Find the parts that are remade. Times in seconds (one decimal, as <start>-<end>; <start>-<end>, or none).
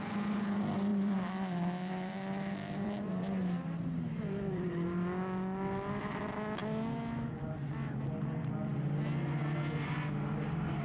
0.9-4.7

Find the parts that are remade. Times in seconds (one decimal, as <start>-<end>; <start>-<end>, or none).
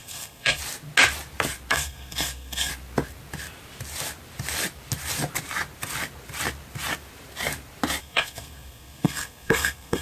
0.0-0.6; 1.7-2.7; 8.0-10.0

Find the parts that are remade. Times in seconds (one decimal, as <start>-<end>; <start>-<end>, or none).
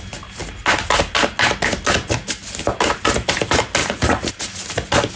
3.8-4.3